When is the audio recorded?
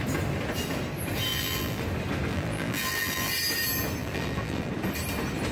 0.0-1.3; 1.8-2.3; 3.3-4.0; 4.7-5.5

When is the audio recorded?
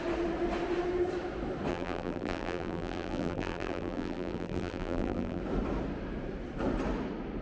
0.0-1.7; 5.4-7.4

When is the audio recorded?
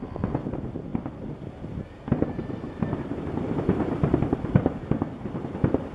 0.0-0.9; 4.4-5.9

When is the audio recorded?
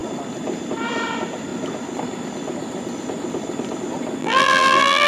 0.0-4.2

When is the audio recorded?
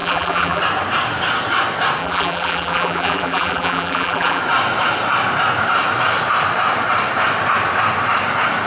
0.6-2.0; 4.4-8.7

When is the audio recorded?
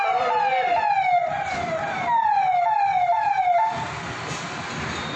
0.0-1.2; 1.9-5.2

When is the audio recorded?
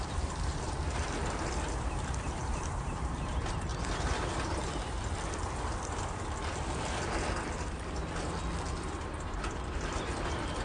3.7-7.7; 8.4-9.2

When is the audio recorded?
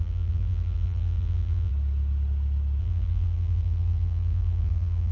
1.7-2.8